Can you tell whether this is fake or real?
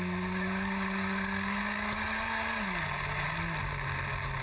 real